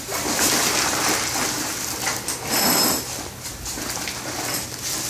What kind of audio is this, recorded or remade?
recorded